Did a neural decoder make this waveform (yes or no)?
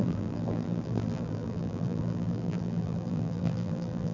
yes